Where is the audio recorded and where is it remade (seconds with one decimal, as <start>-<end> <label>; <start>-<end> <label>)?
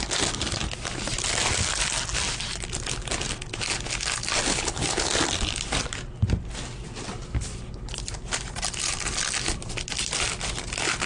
0.0-4.5 recorded; 4.5-5.1 remade; 5.1-11.1 recorded